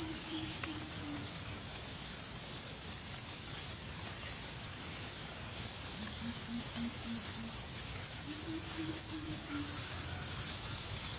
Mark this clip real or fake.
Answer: fake